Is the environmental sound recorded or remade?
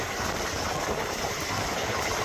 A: recorded